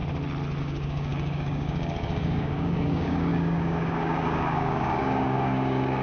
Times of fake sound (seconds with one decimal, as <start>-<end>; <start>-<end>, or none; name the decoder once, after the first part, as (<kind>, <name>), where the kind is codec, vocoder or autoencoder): 0.6-6.0 (codec, DAC)